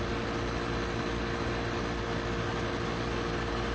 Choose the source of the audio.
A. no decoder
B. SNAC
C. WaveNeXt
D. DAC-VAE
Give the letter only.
A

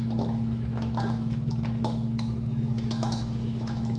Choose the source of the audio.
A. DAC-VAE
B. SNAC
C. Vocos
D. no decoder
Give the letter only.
A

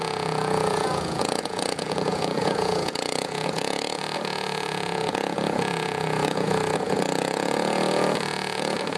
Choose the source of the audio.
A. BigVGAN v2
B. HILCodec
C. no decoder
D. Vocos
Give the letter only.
D